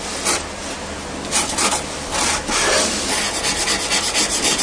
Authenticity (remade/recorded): recorded